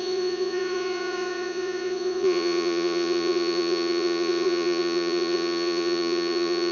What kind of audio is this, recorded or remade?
remade